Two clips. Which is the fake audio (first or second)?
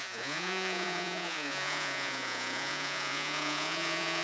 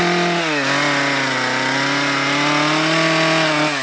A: first